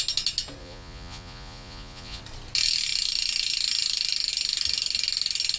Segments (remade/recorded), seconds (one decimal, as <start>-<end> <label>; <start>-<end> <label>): 0.0-0.6 recorded; 0.6-2.2 remade; 2.2-5.6 recorded